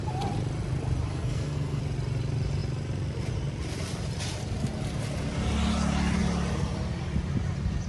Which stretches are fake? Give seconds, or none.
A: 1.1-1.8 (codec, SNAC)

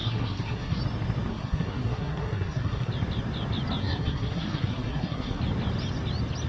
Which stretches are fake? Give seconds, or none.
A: 0.0-0.8 (codec, SNAC); 1.3-2.9; 3.8-5.4

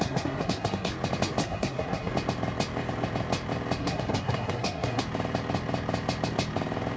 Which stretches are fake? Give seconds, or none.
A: 0.0-0.9 (codec, SNAC); 1.4-2.1; 3.8-5.0

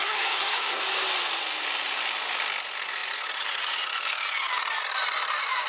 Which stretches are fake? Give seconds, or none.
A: 0.0-0.8 (codec, SNAC)

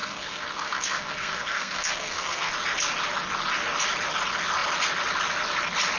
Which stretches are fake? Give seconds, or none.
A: 0.0-2.5 (codec, SNAC)

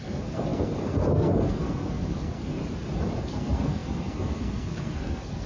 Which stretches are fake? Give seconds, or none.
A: 0.0-2.6 (codec, SNAC); 3.2-5.5

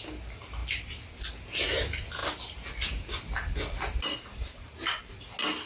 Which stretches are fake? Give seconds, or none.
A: none

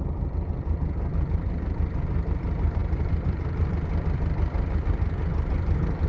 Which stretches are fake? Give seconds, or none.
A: none